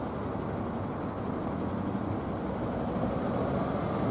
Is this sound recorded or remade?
recorded